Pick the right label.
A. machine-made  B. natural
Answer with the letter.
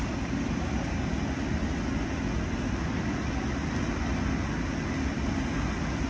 B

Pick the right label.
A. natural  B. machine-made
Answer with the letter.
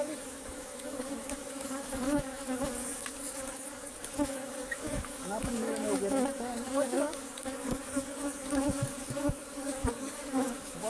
B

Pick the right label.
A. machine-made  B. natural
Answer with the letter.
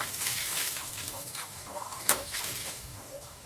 A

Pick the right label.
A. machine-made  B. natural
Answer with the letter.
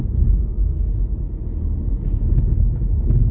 B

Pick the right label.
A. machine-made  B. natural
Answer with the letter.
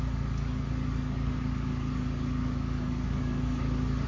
A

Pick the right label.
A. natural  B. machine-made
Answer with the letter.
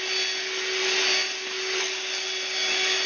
A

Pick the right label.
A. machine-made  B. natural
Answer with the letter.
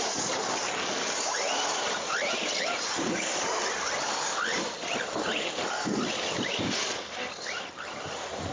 B